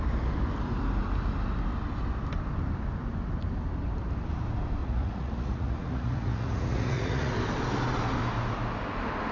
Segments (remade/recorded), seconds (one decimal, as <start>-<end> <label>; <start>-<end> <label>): 0.0-4.8 recorded; 4.8-7.3 remade; 7.3-9.3 recorded